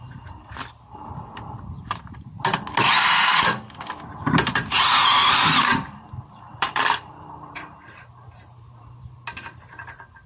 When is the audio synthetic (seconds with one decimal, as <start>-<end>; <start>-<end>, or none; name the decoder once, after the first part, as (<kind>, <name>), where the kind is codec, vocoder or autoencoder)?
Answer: 0.0-2.5 (vocoder, BigVGAN v2); 4.4-10.3